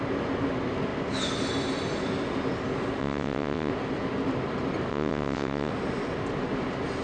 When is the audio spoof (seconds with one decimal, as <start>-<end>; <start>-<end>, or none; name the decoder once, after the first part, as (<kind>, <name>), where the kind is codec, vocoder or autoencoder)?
3.0-3.7 (vocoder, WaveNeXt); 4.9-5.7